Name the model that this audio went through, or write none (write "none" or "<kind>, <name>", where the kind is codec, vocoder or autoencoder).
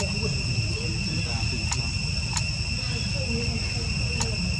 none